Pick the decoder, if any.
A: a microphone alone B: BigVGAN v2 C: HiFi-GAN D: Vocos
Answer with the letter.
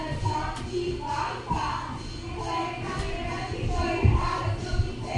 A